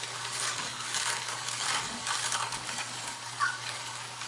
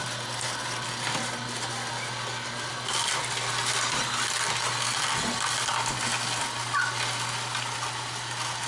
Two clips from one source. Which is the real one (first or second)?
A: second